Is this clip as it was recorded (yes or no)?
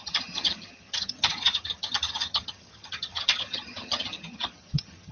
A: no